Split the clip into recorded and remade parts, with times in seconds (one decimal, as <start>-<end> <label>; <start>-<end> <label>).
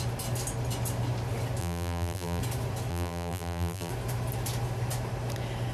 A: 0.0-1.6 recorded; 1.6-2.4 remade; 2.4-2.9 recorded; 2.9-3.9 remade; 3.9-5.7 recorded